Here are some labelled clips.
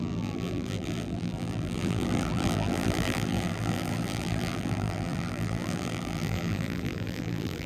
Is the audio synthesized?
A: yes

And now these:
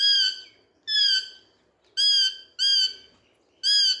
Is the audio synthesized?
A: no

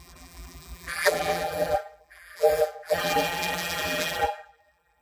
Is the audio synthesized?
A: yes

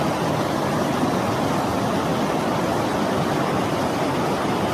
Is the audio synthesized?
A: no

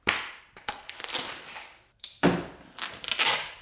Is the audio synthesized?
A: yes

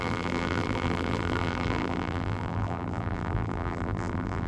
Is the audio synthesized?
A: yes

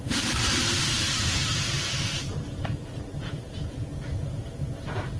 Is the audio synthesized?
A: yes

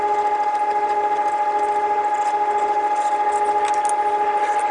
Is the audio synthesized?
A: no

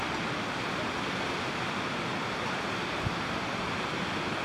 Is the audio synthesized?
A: no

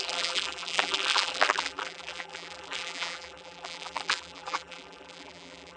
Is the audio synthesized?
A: yes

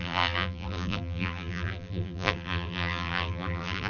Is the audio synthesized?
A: yes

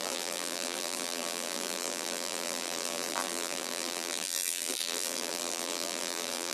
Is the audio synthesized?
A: yes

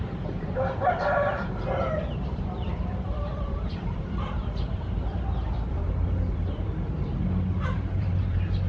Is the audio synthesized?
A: yes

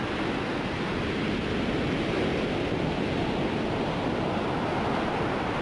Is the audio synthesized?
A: no